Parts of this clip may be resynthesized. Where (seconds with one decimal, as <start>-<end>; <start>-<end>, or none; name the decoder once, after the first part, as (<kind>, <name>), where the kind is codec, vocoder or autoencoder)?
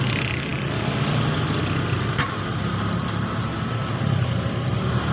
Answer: none